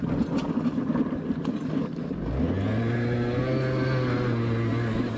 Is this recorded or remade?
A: recorded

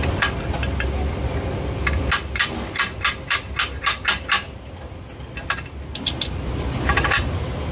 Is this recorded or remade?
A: recorded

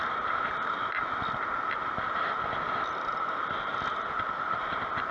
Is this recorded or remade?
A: recorded